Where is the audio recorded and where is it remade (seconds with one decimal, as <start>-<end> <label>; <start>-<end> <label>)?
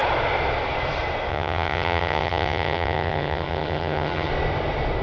0.0-1.3 recorded; 1.3-4.3 remade; 4.3-5.0 recorded